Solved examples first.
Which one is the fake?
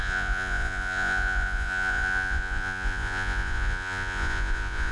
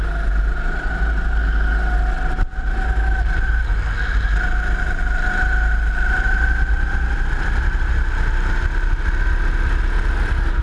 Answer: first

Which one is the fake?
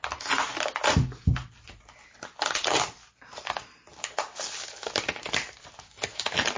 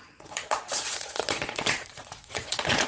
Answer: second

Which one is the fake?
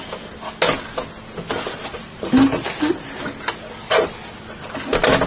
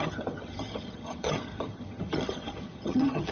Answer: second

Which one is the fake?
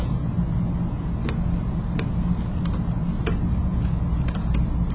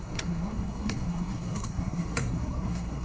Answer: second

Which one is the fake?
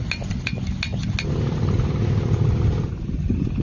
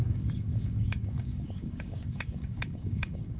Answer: second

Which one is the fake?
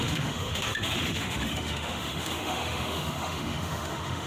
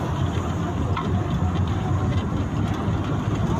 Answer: first